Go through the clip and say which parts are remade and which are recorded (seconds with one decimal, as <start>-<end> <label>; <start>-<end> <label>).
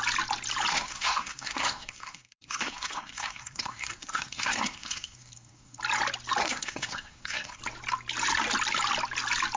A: 0.0-0.7 recorded; 0.7-5.8 remade; 5.8-6.4 recorded; 6.4-7.6 remade; 7.6-9.6 recorded